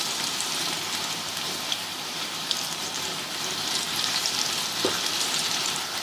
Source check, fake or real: fake